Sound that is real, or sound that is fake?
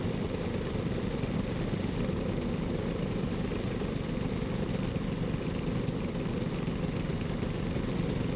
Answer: real